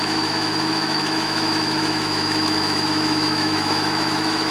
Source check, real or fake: fake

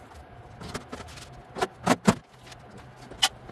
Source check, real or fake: real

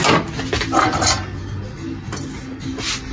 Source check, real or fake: real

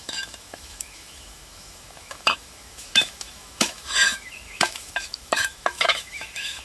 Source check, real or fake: fake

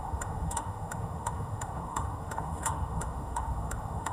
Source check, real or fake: fake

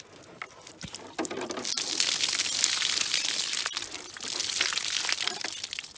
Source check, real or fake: real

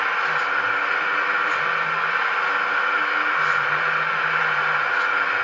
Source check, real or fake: real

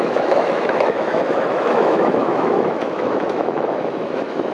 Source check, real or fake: fake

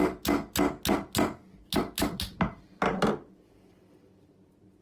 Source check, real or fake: real